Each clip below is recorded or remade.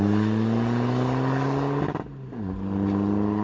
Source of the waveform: recorded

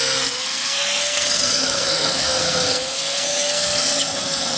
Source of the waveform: remade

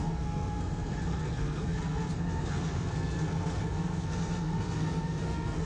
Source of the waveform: remade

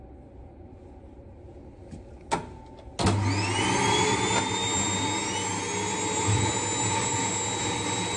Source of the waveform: recorded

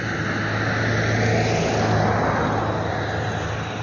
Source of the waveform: recorded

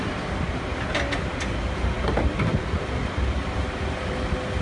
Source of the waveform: recorded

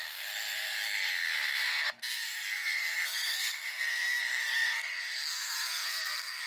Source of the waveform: remade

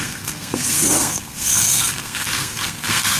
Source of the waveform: remade